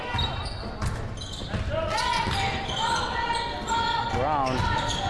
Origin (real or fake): real